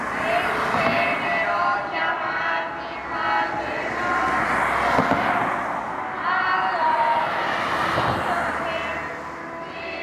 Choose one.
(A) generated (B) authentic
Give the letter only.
B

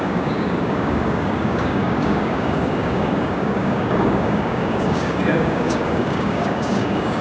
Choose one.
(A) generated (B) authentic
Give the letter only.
A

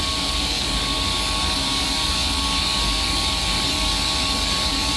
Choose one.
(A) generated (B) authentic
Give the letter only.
A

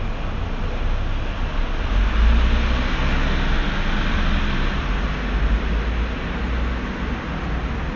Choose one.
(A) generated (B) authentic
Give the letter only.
B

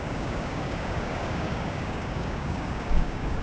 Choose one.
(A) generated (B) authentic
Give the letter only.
A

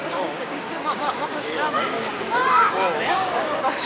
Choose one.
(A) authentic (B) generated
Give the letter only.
B